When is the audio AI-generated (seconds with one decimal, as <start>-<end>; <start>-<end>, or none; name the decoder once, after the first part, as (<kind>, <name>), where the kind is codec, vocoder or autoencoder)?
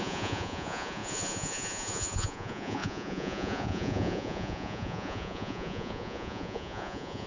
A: 0.0-7.3 (vocoder, Vocos)